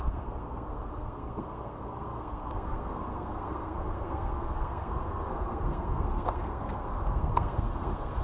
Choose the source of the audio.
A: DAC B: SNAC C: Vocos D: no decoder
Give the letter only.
B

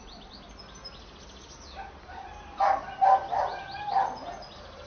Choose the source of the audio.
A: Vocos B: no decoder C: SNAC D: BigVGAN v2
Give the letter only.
B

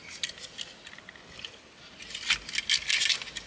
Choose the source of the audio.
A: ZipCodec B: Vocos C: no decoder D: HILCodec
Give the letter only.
C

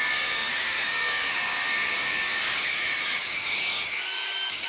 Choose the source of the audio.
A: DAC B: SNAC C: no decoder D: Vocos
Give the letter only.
A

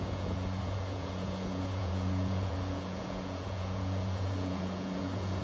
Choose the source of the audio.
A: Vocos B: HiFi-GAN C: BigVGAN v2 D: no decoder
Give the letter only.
A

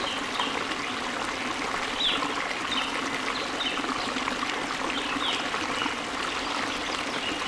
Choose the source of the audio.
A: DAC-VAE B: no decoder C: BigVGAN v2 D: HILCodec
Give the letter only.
B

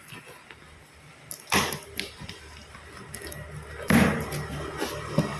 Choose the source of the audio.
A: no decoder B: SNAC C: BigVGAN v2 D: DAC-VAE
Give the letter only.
A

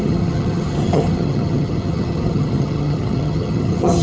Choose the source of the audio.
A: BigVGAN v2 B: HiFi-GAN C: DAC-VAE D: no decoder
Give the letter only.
B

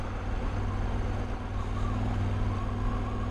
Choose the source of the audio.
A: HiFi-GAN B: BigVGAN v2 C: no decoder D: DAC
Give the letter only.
C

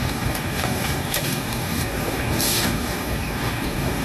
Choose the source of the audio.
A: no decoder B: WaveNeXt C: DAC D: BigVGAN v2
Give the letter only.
C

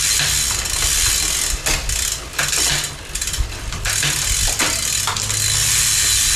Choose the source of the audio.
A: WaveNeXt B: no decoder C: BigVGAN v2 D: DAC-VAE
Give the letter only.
B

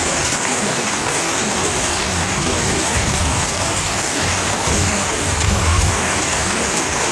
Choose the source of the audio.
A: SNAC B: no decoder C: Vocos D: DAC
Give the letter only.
D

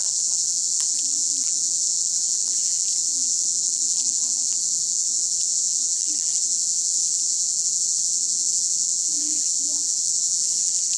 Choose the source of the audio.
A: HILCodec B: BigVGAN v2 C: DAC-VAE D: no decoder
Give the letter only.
B